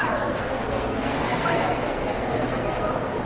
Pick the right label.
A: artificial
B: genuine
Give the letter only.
A